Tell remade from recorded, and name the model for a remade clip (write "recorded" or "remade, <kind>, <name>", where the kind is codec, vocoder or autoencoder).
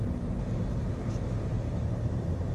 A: recorded